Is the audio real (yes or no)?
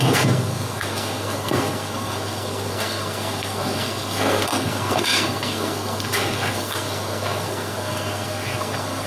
no